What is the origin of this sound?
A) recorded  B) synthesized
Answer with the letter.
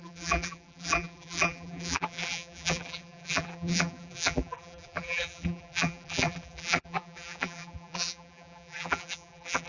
B